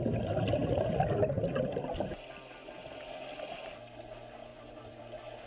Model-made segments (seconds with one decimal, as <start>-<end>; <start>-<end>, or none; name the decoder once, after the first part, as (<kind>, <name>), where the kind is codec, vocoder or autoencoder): 4.5-5.5 (vocoder, BigVGAN v2)